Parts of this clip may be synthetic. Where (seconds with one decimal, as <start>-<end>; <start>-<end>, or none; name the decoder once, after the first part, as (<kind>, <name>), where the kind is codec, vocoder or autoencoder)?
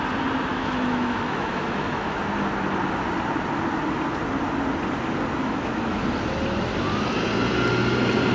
0.5-2.2 (autoencoder, DAC-VAE); 5.4-6.0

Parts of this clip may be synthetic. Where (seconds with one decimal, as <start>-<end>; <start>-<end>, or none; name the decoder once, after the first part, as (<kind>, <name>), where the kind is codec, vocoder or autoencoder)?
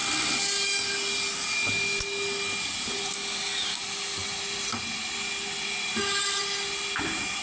none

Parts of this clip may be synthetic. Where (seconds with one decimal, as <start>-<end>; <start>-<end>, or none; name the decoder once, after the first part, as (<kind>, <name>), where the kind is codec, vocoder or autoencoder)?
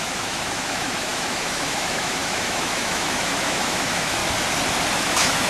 0.0-4.2 (autoencoder, DAC-VAE); 4.9-5.5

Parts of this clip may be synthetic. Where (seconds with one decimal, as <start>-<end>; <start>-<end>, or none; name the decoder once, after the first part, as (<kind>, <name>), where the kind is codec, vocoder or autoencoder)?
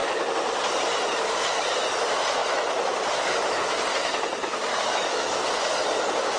4.4-5.4 (autoencoder, DAC-VAE)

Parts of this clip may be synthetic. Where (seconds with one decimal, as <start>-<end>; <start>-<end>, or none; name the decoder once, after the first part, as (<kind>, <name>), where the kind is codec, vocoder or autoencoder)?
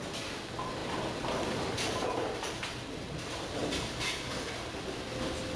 none